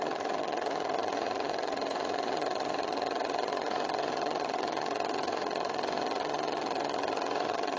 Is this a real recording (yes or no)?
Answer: no